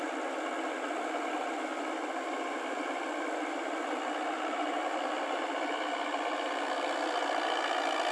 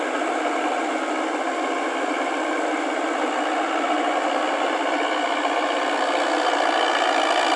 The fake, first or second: first